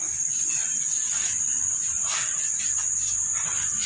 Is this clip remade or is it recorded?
recorded